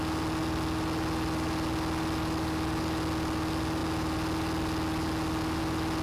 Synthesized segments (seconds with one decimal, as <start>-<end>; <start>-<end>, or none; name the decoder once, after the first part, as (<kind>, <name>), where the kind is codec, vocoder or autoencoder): none